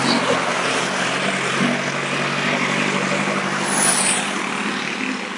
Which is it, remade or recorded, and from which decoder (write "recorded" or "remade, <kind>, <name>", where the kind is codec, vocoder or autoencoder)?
recorded